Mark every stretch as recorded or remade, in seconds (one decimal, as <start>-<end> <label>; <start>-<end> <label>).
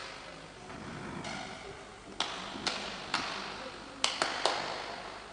0.0-5.3 recorded